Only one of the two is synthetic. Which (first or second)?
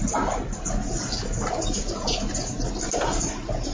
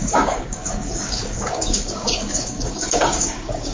second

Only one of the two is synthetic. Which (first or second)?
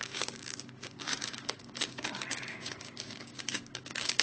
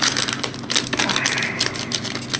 first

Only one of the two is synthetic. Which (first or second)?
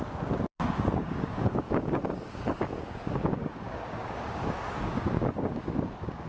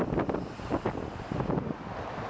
first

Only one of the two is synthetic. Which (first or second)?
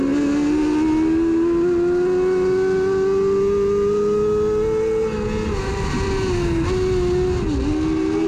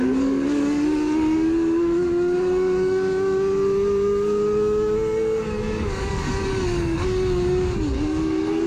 second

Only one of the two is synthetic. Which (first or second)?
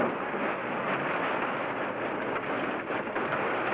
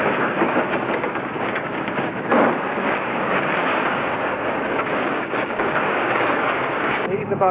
second